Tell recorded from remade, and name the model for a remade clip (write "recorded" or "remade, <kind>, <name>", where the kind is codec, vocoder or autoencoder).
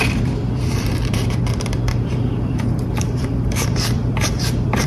remade, vocoder, BigVGAN v2